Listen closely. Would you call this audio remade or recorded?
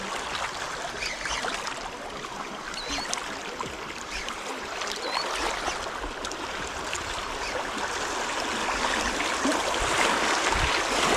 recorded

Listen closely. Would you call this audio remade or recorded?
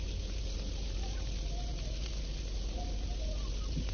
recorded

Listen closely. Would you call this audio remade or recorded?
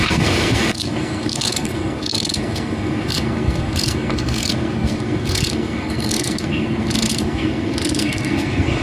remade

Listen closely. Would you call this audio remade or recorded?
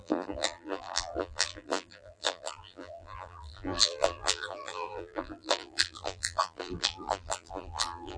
remade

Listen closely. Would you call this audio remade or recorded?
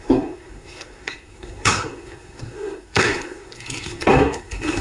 remade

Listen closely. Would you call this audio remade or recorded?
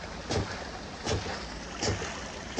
recorded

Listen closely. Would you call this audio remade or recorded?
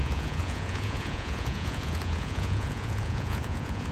remade